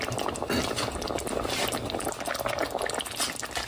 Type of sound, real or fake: real